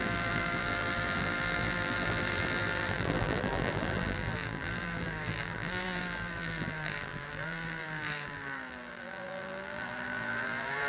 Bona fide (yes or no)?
no